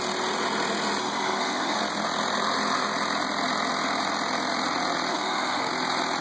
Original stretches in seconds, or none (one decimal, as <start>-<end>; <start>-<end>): 0.0-1.0; 1.8-5.1; 5.7-6.2